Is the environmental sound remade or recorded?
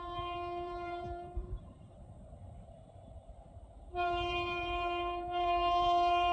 remade